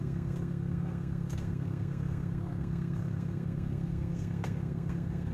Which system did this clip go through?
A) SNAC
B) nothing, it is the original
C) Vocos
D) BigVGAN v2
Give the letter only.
A